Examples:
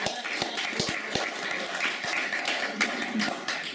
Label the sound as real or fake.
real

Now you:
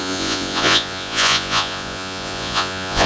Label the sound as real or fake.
fake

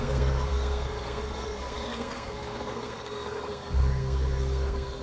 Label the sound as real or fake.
fake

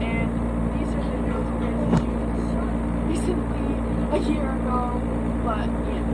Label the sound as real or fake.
real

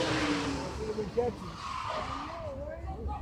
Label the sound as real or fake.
real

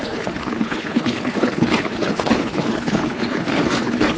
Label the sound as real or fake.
fake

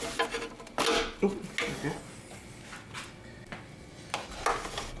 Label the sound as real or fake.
real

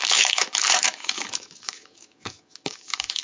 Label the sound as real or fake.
fake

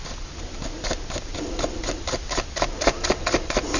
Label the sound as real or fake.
real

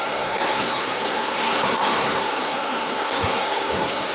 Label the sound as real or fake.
fake